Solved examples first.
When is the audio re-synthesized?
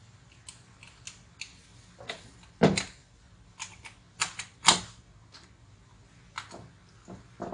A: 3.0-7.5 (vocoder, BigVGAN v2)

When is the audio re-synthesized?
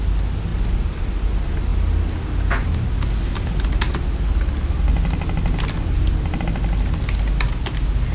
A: none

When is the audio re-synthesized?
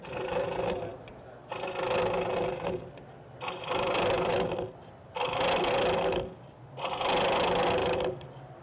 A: none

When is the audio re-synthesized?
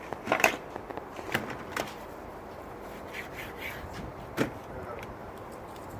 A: 0.9-4.5 (vocoder, BigVGAN v2); 5.2-6.0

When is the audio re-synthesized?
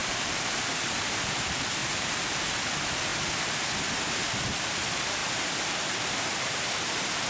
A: 0.0-0.7 (vocoder, BigVGAN v2); 1.8-2.5; 5.2-7.3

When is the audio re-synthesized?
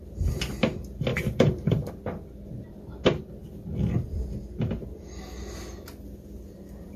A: 1.1-1.9 (vocoder, BigVGAN v2)